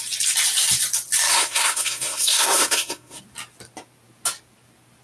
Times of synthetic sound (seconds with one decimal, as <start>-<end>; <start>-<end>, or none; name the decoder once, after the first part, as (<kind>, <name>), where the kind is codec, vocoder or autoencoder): 1.3-3.2 (codec, SNAC)